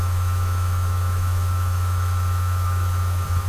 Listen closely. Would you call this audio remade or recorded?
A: remade